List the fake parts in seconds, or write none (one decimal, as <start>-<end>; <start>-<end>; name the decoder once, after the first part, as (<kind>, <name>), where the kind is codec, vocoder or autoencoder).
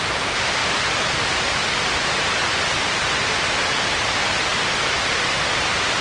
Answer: 0.6-3.4 (vocoder, BigVGAN v2)